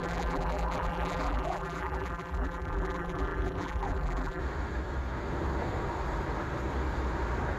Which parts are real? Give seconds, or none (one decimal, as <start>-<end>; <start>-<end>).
4.4-7.6